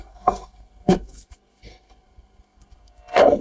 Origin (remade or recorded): remade